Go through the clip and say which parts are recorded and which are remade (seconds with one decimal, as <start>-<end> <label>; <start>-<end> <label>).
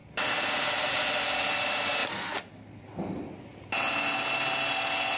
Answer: 0.0-5.2 recorded